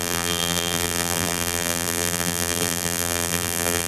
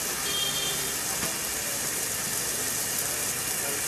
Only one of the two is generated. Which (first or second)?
first